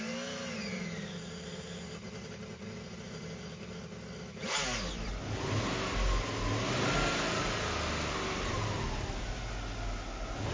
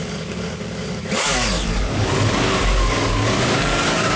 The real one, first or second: first